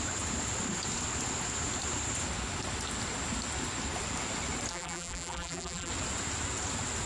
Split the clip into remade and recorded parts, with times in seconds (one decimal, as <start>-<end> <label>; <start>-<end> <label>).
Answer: 0.0-4.7 recorded; 4.7-5.9 remade; 5.9-7.1 recorded